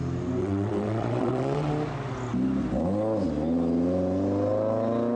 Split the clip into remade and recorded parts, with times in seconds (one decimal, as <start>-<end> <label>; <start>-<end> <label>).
0.0-0.4 recorded; 0.4-1.7 remade; 1.7-5.2 recorded